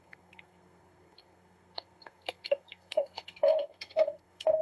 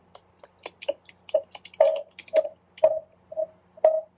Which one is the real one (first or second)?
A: second